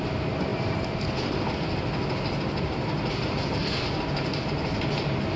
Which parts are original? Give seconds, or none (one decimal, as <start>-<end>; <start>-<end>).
0.0-5.4